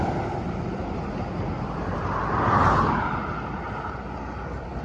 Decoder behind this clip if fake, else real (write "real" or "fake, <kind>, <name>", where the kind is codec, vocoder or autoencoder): real